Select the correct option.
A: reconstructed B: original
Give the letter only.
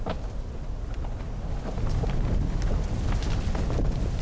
B